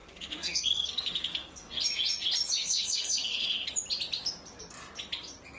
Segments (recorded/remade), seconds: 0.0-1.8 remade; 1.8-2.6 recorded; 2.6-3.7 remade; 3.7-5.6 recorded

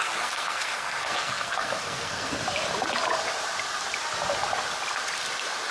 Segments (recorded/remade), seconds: 0.0-2.4 remade; 2.4-5.7 recorded

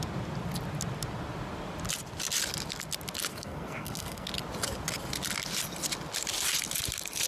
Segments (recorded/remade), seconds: 0.0-3.3 recorded; 3.3-4.3 remade; 4.3-7.3 recorded

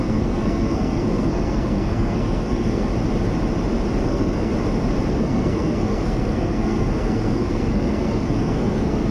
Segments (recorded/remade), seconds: 0.0-2.9 remade; 2.9-4.0 recorded; 4.0-4.5 remade; 4.5-5.1 recorded; 5.1-9.1 remade